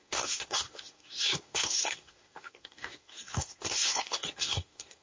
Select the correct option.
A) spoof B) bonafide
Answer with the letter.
A